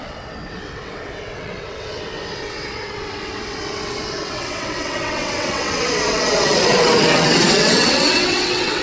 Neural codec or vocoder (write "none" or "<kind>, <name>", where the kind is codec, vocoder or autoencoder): vocoder, WaveNeXt